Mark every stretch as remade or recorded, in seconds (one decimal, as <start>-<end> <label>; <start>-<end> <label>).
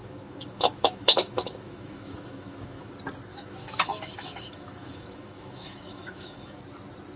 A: 0.0-2.9 remade; 2.9-3.3 recorded; 3.3-6.6 remade; 6.6-7.2 recorded